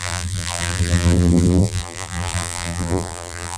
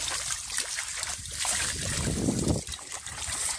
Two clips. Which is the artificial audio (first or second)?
first